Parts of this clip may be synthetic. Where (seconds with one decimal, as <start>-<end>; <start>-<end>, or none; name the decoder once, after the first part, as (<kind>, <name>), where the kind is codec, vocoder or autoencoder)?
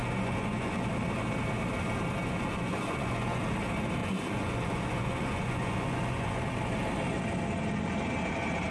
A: 0.0-0.9 (vocoder, Vocos); 2.2-3.4; 4.0-6.4